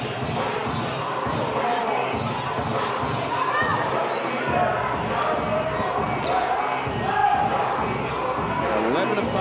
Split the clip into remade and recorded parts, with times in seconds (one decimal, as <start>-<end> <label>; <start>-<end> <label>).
0.0-9.4 recorded